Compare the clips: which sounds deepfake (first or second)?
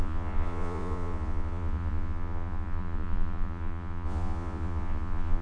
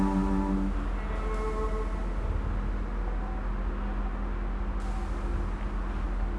first